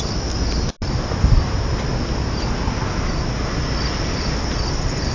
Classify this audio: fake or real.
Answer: real